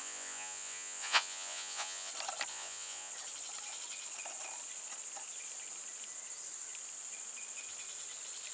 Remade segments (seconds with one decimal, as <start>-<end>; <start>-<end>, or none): 0.0-2.1; 2.5-3.1